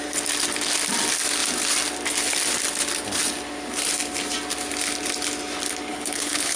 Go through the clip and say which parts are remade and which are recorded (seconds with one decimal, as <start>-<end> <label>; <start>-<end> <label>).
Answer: 0.0-5.9 recorded; 5.9-6.6 remade